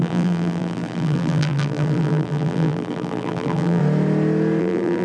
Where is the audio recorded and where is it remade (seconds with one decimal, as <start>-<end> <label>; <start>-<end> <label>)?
0.0-3.8 remade; 3.8-4.6 recorded; 4.6-5.0 remade